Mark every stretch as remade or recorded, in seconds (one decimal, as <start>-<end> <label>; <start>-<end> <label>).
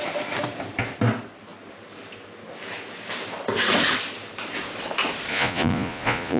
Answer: 0.0-5.3 recorded; 5.3-6.4 remade